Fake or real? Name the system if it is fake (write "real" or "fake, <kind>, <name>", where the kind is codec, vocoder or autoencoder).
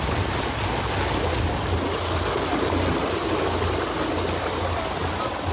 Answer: real